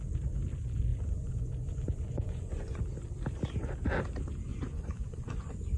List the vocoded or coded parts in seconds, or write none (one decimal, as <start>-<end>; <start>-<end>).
0.9-2.8; 4.5-5.8